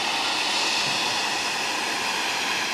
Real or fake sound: real